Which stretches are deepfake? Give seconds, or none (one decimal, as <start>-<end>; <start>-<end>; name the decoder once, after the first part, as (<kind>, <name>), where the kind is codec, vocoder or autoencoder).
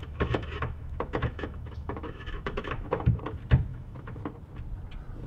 0.0-3.2 (autoencoder, DAC-VAE); 3.7-4.2